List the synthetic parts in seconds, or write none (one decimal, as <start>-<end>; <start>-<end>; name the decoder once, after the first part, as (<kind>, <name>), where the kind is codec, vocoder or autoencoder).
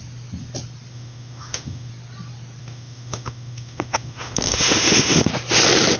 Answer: 0.9-1.9 (autoencoder, DAC-VAE); 2.6-5.3